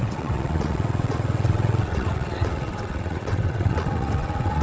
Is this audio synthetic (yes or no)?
yes